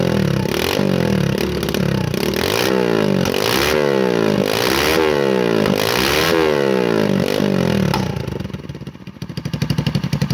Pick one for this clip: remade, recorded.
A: recorded